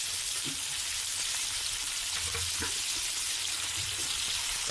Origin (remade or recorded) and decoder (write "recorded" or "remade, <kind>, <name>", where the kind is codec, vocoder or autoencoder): recorded